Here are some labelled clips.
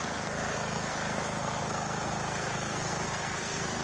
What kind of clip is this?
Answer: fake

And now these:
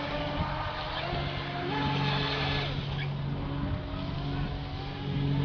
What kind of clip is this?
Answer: real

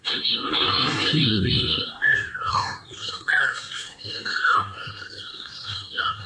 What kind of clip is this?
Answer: fake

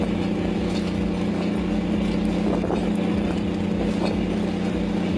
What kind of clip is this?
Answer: real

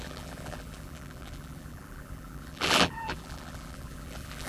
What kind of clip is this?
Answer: fake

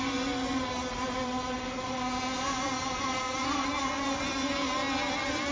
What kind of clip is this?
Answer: real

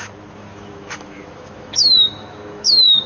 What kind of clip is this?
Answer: fake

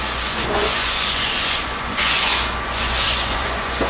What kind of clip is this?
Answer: fake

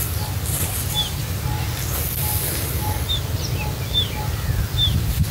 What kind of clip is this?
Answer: real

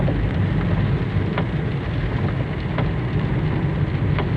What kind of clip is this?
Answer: real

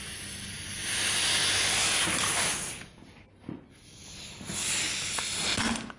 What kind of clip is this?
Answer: real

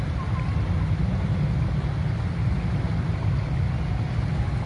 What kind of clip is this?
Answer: real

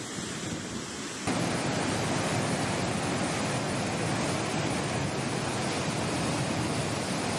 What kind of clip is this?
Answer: real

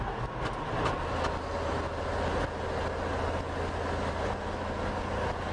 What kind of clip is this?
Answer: real